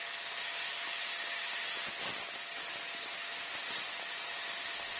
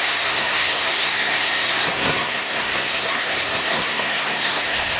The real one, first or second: first